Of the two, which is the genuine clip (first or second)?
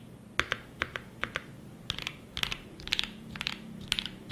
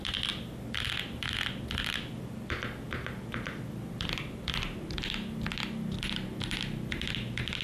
second